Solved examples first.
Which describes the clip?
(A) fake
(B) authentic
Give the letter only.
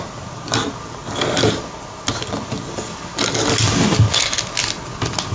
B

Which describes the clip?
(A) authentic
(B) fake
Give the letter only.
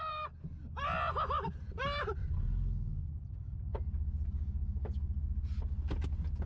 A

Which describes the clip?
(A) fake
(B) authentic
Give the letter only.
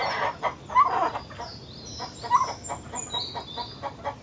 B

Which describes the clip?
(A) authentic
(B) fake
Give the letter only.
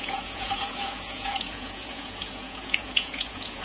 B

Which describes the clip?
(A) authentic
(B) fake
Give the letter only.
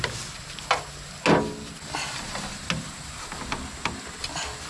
A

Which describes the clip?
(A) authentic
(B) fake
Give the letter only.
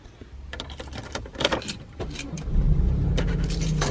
A